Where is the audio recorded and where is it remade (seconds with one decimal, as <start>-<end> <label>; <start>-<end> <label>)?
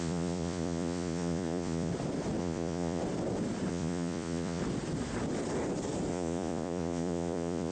0.0-1.9 remade; 1.9-2.4 recorded; 2.4-3.0 remade; 3.0-3.7 recorded; 3.7-4.6 remade; 4.6-6.1 recorded; 6.1-7.7 remade